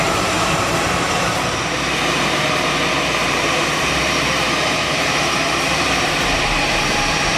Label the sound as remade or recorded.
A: remade